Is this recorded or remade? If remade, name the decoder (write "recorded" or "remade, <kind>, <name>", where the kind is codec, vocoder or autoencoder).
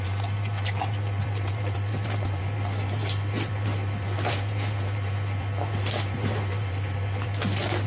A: remade, vocoder, BigVGAN v2